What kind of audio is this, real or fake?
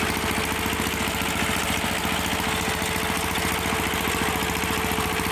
real